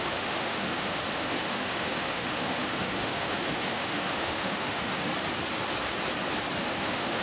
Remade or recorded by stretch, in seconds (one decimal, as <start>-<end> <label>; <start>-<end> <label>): 0.0-5.1 remade; 5.1-6.6 recorded; 6.6-7.2 remade